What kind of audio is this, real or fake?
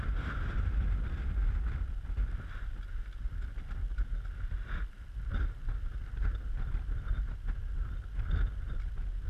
real